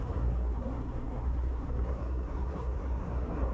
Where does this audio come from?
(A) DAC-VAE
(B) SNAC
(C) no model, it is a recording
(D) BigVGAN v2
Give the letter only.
B